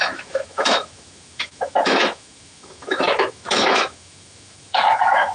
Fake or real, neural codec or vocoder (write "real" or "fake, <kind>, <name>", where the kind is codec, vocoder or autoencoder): fake, autoencoder, DAC-VAE